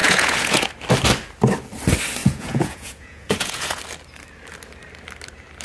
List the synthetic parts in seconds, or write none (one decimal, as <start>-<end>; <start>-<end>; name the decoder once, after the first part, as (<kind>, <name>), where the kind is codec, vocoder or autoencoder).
0.0-0.7 (vocoder, Vocos); 2.2-3.8